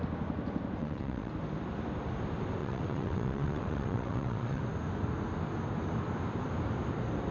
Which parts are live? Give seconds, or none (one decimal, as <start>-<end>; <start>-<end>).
0.0-0.8; 1.3-2.6; 4.6-7.3